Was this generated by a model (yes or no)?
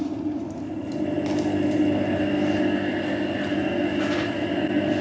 no